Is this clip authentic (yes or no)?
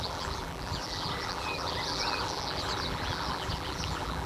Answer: no